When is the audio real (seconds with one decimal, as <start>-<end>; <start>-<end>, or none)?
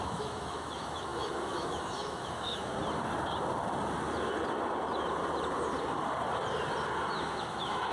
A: 2.7-7.2